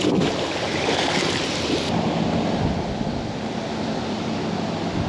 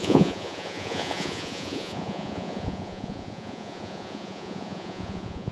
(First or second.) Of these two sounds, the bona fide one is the first